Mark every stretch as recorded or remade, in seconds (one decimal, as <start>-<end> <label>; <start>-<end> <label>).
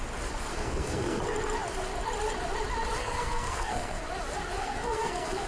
0.0-0.5 recorded; 0.5-1.2 remade; 1.2-3.0 recorded; 3.0-4.0 remade; 4.0-4.6 recorded; 4.6-5.5 remade